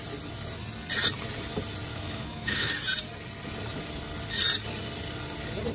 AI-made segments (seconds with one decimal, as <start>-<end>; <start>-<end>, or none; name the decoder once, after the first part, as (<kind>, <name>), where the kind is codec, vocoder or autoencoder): 1.9-2.7 (autoencoder, DAC-VAE)